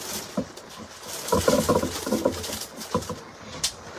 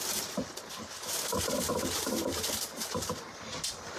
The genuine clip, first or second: first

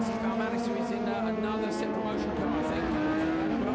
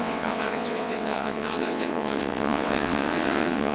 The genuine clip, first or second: first